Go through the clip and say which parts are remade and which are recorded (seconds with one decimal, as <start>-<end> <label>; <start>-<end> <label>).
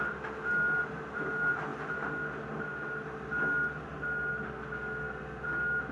0.0-5.9 recorded